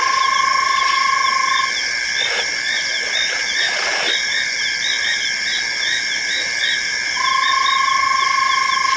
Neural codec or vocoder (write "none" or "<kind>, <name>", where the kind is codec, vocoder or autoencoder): none